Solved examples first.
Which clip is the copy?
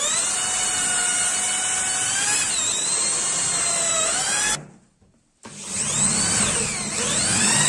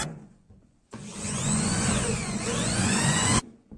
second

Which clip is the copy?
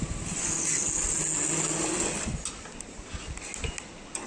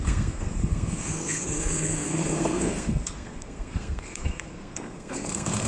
second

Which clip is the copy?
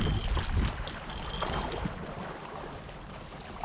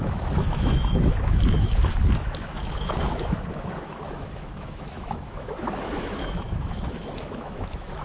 second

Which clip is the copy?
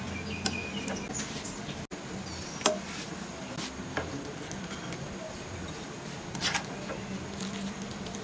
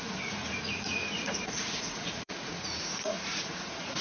second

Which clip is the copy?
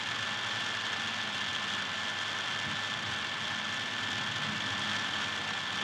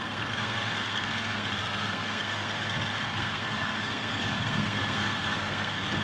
second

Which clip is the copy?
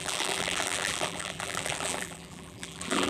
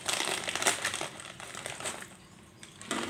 first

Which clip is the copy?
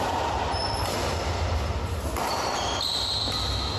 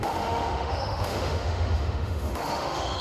second